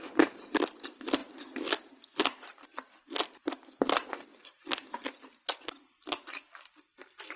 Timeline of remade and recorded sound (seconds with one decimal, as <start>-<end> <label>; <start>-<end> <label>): 0.0-7.4 recorded